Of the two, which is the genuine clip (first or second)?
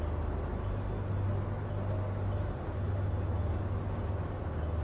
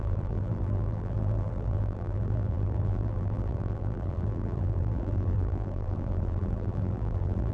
first